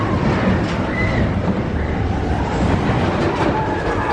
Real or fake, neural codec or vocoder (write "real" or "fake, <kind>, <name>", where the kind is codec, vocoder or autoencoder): fake, vocoder, BigVGAN v2